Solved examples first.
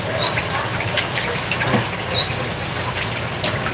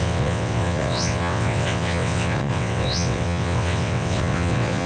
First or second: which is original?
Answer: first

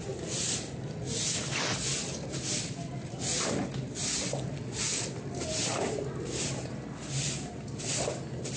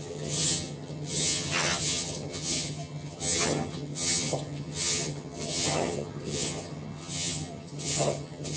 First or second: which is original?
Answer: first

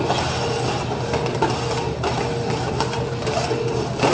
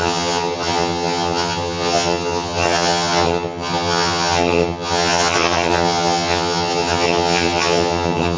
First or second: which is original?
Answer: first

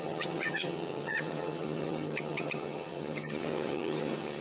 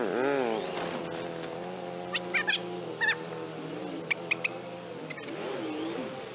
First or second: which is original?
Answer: second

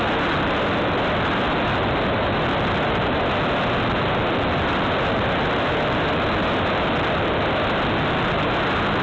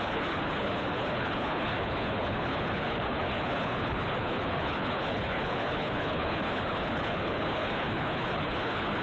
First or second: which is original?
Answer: first